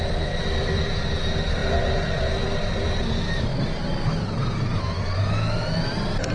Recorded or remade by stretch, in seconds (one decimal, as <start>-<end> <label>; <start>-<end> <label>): 0.0-6.3 recorded